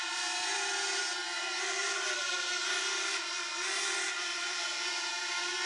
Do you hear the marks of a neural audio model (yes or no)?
yes